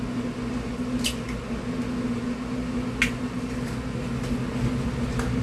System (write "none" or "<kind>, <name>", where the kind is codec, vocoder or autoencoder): none